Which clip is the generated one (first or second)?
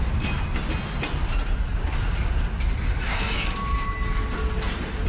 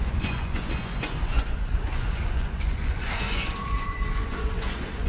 second